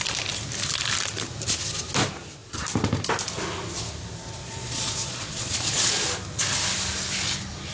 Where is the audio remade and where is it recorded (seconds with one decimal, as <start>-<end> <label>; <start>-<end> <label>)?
0.0-4.4 recorded; 4.4-5.9 remade; 5.9-7.7 recorded